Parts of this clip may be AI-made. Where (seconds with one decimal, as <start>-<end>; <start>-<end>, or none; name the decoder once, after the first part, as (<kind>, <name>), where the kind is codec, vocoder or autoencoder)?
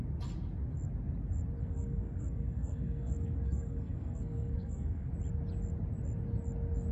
1.6-5.1 (codec, SNAC)